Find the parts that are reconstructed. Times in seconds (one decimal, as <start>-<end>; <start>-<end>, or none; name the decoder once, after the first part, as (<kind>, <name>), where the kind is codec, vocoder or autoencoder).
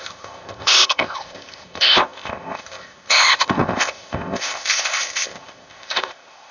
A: 0.0-6.5 (codec, ZipCodec)